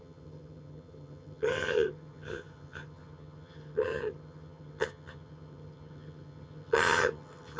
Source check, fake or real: fake